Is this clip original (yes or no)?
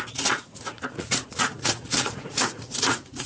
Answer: no